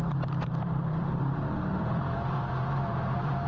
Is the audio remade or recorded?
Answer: remade